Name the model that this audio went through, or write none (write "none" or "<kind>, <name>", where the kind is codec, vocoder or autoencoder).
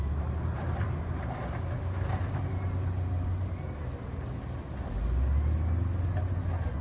none